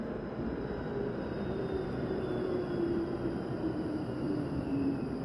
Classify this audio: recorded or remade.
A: remade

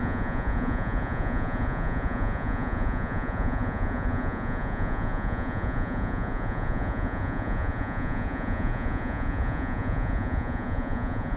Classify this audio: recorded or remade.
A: remade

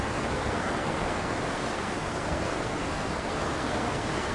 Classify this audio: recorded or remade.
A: remade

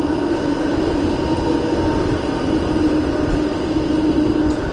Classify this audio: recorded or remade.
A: recorded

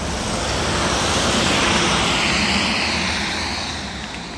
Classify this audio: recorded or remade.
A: recorded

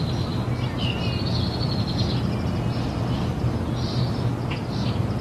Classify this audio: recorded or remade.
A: recorded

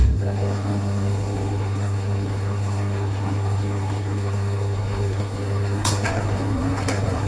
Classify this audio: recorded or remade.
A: remade